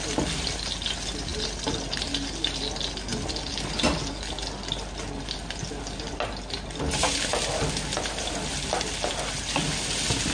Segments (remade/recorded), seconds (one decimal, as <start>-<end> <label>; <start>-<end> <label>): 0.0-10.3 recorded